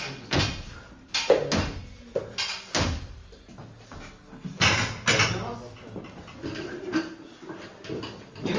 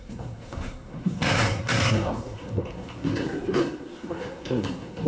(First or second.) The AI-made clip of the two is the second